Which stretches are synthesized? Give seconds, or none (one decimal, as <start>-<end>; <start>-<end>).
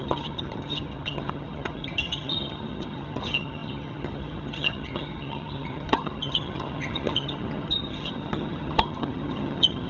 0.0-9.9